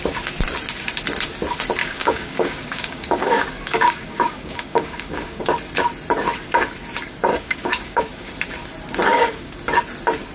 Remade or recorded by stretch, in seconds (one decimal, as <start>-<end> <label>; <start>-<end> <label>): 0.0-1.8 recorded; 1.8-5.4 remade; 5.4-7.3 recorded; 7.3-8.3 remade; 8.3-9.1 recorded; 9.1-9.6 remade; 9.6-10.3 recorded